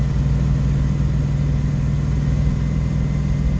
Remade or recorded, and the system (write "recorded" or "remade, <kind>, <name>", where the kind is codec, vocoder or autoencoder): recorded